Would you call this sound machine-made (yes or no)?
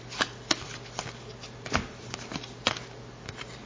no